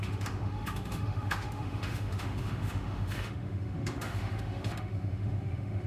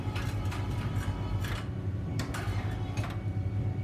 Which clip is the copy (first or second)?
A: first